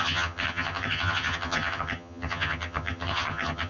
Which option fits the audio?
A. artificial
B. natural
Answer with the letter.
A